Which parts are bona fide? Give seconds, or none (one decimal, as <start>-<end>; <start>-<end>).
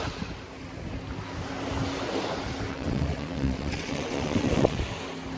0.0-2.7; 4.8-5.4